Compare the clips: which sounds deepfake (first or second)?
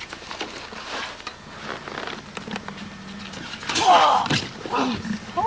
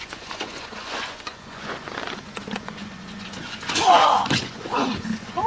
second